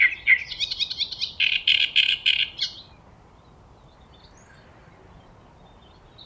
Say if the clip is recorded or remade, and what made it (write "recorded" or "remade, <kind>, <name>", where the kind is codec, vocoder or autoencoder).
recorded